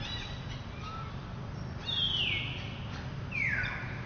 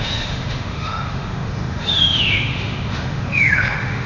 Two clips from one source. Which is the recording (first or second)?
first